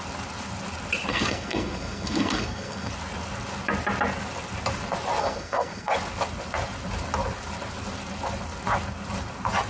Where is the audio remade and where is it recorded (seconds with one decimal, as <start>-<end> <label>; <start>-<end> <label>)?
0.0-1.1 recorded; 1.1-2.9 remade; 2.9-5.2 recorded; 5.2-5.9 remade; 5.9-9.7 recorded